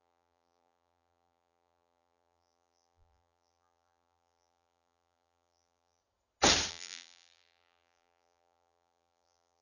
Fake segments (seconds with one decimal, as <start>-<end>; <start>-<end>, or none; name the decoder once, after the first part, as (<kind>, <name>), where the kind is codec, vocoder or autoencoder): 0.0-6.0 (vocoder, BigVGAN v2); 6.7-9.6

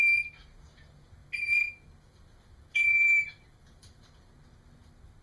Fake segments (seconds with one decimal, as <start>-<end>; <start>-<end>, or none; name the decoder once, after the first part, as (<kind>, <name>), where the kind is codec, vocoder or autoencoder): 1.2-4.3 (vocoder, BigVGAN v2)

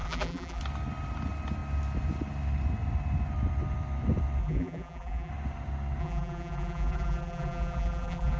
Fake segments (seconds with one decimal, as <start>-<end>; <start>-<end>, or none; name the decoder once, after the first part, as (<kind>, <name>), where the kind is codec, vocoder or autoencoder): 0.0-0.6 (vocoder, BigVGAN v2); 4.4-5.3; 6.0-8.4

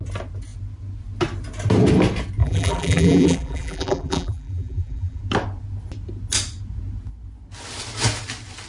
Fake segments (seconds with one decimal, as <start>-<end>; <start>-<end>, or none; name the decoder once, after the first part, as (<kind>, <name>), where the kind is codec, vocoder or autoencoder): 2.4-5.2 (vocoder, BigVGAN v2)

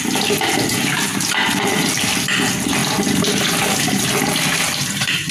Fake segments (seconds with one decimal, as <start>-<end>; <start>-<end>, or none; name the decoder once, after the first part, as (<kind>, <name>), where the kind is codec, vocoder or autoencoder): none

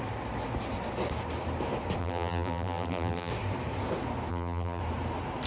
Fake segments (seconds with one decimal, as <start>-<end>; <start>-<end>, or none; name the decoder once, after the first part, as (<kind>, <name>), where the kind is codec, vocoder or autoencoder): 2.0-3.3 (vocoder, BigVGAN v2); 4.3-4.8

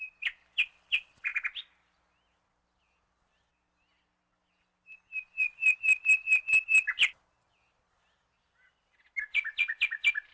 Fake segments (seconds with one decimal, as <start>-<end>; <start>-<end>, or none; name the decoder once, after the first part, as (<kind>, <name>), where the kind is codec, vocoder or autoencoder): none